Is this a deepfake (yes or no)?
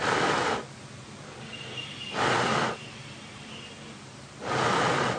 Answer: no